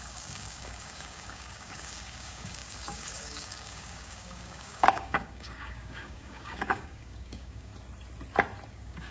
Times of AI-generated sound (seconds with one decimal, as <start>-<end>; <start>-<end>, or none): 0.0-7.7; 8.7-9.1